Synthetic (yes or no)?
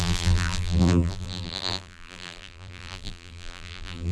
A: yes